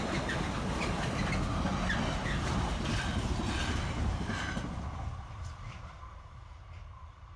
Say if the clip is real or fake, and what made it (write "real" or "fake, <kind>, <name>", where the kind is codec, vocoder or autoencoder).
real